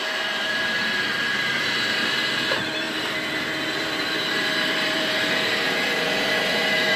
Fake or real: fake